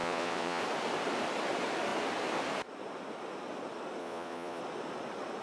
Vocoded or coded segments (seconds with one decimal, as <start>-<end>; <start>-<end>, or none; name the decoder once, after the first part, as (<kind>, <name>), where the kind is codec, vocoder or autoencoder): 0.0-0.6 (vocoder, Vocos); 4.0-4.6